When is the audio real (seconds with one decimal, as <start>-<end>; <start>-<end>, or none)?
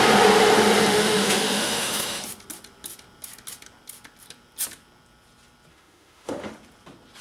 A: 0.0-0.9; 2.2-5.7; 6.5-7.2